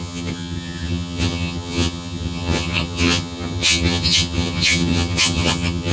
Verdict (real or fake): fake